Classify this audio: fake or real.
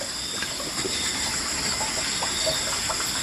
real